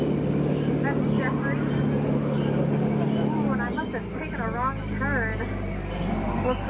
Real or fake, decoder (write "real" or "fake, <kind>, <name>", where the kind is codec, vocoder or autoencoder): real